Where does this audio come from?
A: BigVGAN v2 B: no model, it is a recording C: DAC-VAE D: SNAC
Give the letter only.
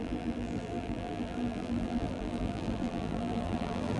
A